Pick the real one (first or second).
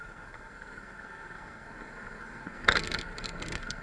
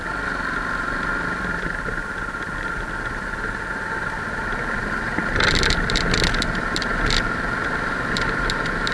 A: second